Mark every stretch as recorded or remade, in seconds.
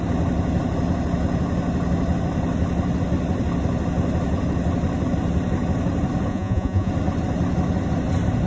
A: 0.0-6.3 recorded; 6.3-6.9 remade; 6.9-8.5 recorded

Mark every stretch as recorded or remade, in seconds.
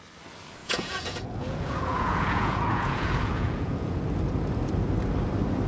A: 0.0-0.6 recorded; 0.6-4.0 remade; 4.0-5.7 recorded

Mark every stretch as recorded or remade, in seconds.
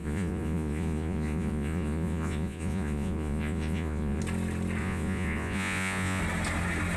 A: 0.0-4.2 remade; 4.2-4.8 recorded; 4.8-6.2 remade; 6.2-7.0 recorded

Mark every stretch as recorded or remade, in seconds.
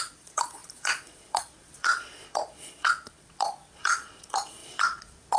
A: 0.0-5.4 remade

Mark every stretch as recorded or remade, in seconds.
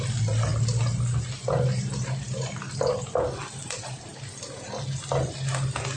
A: 0.0-6.0 recorded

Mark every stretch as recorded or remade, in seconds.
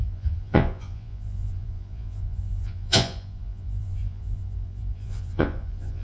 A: 0.0-6.0 remade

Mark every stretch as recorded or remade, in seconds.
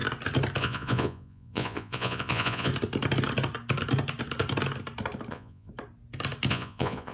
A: 0.0-0.6 recorded; 0.6-2.7 remade; 2.7-5.3 recorded; 5.3-5.7 remade; 5.7-6.5 recorded; 6.5-7.1 remade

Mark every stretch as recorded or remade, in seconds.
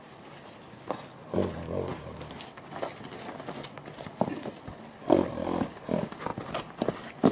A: 0.0-7.3 recorded